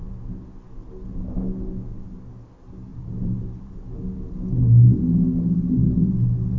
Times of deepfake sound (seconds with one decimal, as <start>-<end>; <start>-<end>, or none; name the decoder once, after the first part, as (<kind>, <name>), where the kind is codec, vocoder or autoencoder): 2.9-3.7 (vocoder, BigVGAN v2)